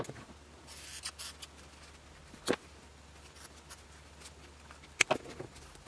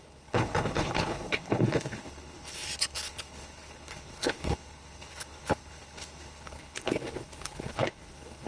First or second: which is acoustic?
first